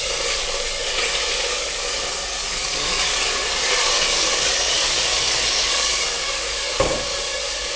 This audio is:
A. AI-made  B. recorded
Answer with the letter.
A